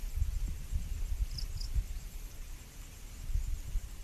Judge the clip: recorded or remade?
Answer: recorded